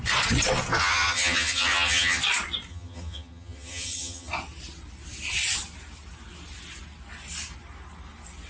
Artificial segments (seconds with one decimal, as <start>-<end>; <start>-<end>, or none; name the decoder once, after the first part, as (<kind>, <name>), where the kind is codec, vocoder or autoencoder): 0.8-2.2 (vocoder, HiFi-GAN); 2.7-4.3